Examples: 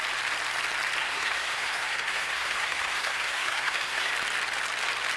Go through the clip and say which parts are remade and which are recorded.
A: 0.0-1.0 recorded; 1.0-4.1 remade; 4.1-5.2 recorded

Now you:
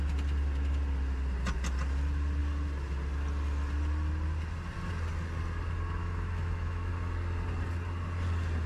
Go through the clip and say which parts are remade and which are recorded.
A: 0.0-6.0 recorded; 6.0-6.9 remade; 6.9-8.7 recorded

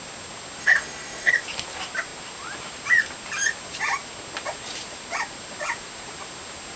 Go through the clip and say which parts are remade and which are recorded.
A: 0.0-0.6 recorded; 0.6-1.3 remade; 1.3-6.8 recorded

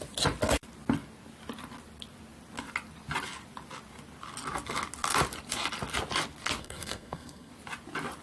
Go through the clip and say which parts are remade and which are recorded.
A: 0.0-6.6 recorded; 6.6-7.5 remade; 7.5-8.2 recorded